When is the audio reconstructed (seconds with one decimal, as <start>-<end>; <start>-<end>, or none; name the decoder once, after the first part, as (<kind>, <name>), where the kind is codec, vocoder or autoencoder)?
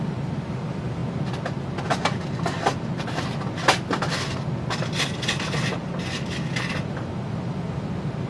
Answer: none